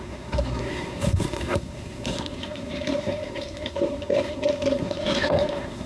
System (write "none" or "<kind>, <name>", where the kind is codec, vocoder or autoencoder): codec, SNAC